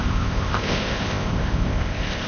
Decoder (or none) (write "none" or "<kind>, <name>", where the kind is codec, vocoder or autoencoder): codec, ZipCodec